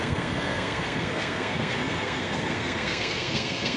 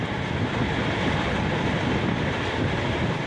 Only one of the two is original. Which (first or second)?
second